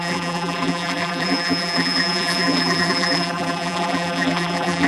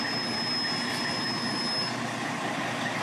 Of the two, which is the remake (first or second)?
first